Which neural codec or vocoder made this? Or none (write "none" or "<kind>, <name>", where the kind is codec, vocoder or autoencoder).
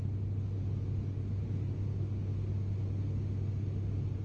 none